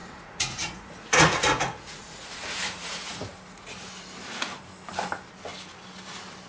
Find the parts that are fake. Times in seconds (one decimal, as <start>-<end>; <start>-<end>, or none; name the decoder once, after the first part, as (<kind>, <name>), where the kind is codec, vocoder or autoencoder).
0.0-3.9 (vocoder, Vocos)